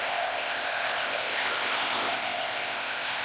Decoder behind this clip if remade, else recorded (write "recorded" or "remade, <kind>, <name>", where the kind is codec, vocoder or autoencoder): remade, codec, ZipCodec